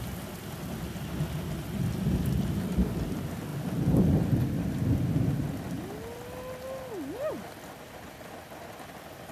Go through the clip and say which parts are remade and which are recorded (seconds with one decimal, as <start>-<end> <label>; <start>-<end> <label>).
0.0-9.3 recorded